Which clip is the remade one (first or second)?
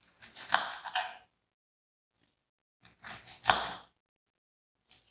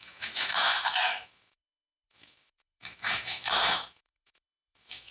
second